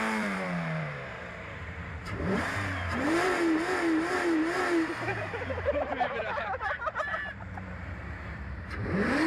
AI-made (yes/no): yes